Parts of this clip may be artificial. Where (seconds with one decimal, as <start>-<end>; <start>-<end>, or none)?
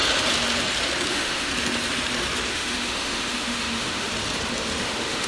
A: 1.1-1.5; 2.5-4.1; 4.8-5.3